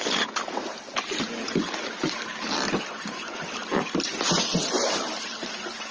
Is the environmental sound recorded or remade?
recorded